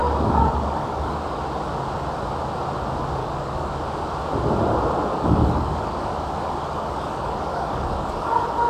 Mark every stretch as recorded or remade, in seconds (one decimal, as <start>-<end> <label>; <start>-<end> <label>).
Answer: 0.0-1.4 remade; 1.4-3.2 recorded; 3.2-3.8 remade; 3.8-5.1 recorded; 5.1-8.7 remade